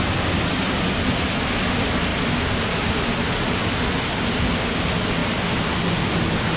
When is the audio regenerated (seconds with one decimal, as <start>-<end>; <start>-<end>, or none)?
2.1-3.0